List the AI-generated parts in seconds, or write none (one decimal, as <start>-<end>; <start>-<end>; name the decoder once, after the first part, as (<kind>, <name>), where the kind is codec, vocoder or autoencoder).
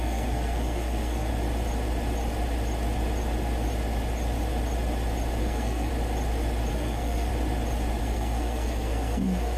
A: 0.0-1.3 (codec, SNAC); 5.4-5.9; 6.7-7.3; 8.0-9.6